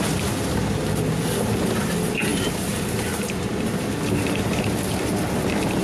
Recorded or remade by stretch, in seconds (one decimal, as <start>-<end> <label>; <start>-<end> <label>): 0.0-5.8 recorded